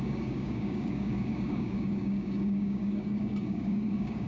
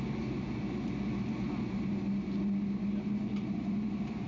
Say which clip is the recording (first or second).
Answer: second